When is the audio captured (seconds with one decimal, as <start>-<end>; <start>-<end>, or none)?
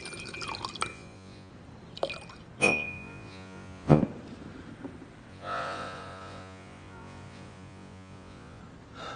0.0-0.9; 1.5-2.6; 4.0-5.3; 8.6-9.2